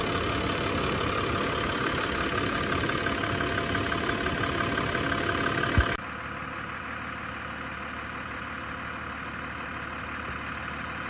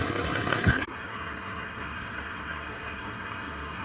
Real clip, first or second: first